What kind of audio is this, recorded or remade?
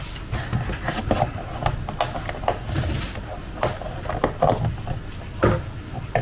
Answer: recorded